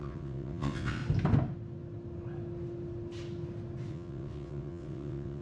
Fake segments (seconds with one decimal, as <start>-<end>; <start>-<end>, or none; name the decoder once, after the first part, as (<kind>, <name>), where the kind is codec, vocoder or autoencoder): 0.0-1.0 (vocoder, WaveNeXt); 3.9-5.4